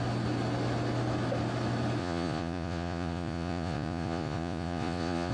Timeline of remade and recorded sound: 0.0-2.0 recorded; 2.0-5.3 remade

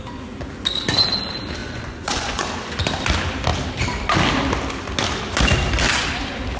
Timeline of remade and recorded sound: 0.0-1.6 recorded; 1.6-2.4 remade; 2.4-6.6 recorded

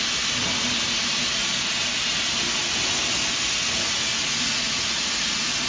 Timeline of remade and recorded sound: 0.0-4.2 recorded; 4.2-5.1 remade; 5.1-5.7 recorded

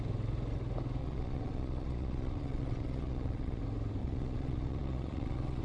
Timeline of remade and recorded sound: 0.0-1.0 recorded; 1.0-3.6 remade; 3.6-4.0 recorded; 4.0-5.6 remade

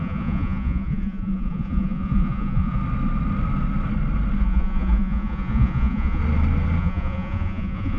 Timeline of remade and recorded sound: 0.0-2.8 remade; 2.8-4.4 recorded; 4.4-6.2 remade; 6.2-6.8 recorded; 6.8-8.0 remade

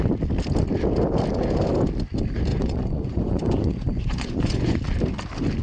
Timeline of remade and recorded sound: 0.0-2.5 recorded; 2.5-4.8 remade; 4.8-5.6 recorded

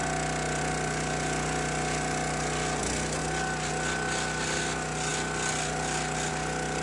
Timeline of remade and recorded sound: 0.0-6.8 recorded